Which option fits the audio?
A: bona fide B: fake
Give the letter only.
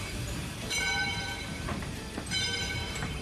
B